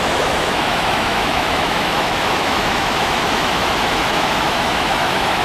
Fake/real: fake